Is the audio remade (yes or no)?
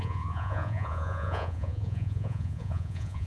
yes